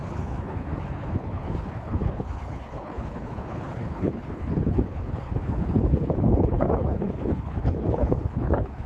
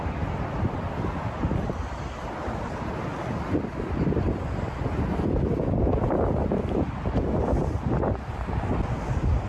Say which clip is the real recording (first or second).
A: second